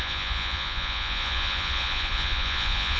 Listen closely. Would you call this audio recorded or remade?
remade